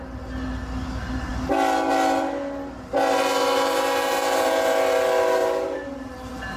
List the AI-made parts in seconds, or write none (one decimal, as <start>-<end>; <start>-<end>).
5.4-6.6